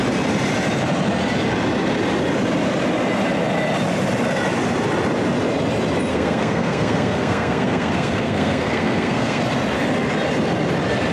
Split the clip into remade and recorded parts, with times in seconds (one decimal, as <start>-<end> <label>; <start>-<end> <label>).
0.0-6.1 recorded; 6.1-9.4 remade; 9.4-11.1 recorded